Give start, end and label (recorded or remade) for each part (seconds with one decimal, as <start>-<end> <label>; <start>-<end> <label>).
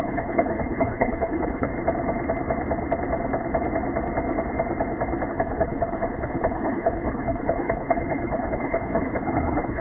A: 0.0-1.7 remade; 1.7-5.3 recorded; 5.3-9.8 remade